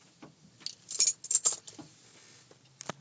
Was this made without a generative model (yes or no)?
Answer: yes